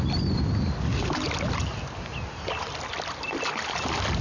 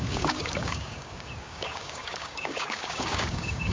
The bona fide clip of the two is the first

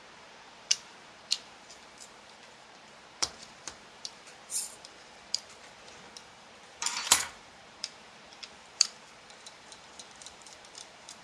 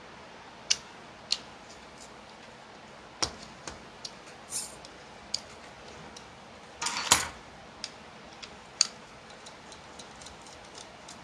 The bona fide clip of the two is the second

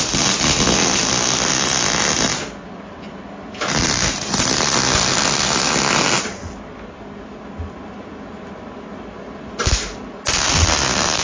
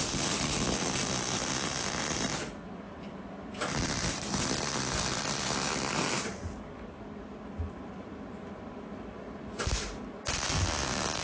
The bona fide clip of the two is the first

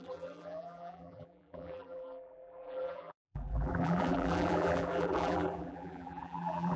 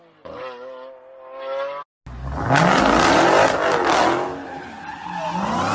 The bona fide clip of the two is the second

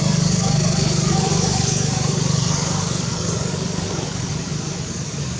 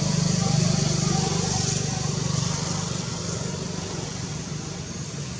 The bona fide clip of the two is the second